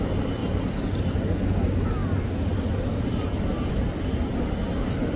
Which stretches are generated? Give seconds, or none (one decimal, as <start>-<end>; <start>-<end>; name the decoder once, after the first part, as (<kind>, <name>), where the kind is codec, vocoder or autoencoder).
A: 0.4-1.2 (vocoder, BigVGAN v2)